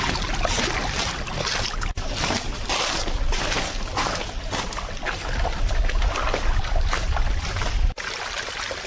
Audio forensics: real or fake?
real